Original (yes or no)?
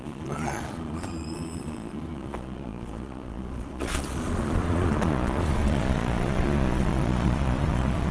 no